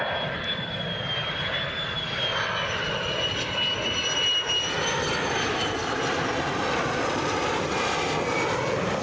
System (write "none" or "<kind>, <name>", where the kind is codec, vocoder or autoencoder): none